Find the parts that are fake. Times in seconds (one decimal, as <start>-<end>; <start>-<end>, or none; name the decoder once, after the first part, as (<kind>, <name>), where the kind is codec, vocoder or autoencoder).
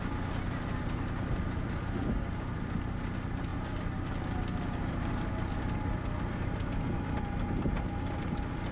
none